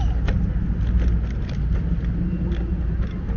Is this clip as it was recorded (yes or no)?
yes